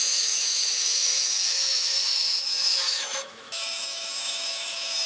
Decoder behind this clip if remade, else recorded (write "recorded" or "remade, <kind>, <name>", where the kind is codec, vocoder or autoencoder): remade, autoencoder, DAC-VAE